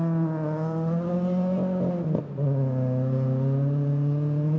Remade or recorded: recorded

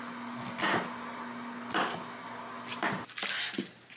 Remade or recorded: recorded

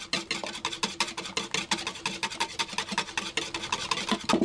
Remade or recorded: recorded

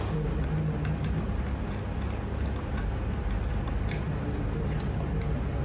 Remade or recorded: recorded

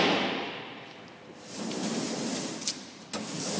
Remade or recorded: recorded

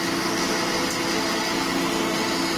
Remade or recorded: recorded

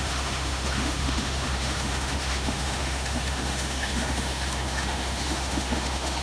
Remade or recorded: remade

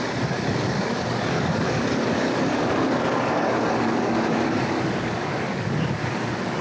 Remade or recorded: remade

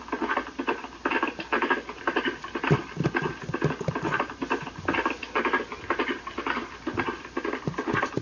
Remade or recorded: recorded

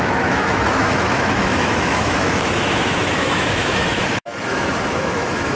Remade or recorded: remade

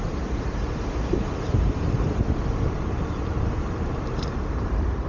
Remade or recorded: remade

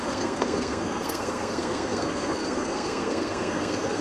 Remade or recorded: remade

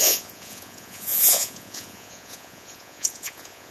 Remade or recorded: remade